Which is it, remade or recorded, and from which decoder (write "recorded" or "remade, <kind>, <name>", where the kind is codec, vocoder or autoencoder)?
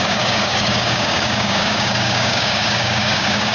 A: remade, codec, DAC